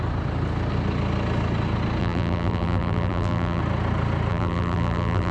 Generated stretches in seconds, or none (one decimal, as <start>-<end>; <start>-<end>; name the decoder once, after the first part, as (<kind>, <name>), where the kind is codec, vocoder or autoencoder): 2.0-3.6 (vocoder, BigVGAN v2); 4.3-5.3